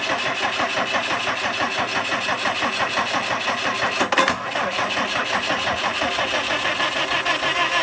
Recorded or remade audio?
recorded